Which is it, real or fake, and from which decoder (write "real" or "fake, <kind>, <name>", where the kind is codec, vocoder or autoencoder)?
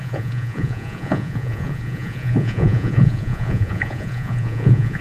fake, vocoder, Vocos